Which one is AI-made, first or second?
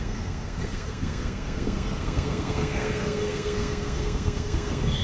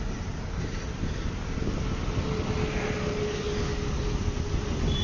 first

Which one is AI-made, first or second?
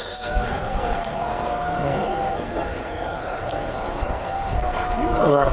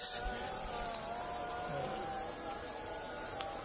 first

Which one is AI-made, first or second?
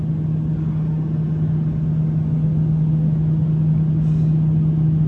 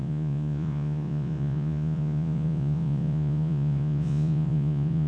second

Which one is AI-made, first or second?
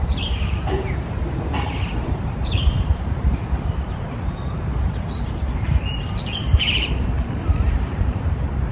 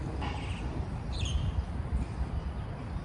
first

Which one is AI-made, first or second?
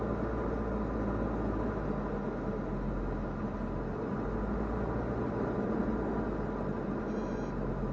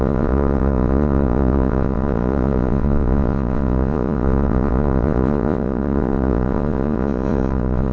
second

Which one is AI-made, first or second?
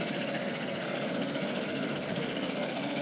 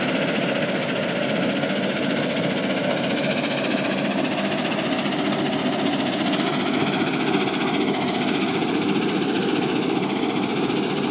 first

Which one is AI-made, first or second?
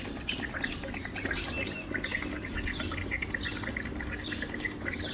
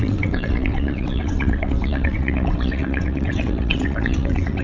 second